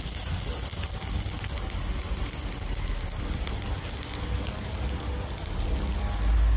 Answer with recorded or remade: recorded